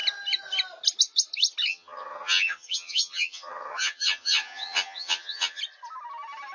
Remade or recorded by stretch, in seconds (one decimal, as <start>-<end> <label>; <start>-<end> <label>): 0.0-1.7 recorded; 1.7-5.6 remade; 5.6-6.5 recorded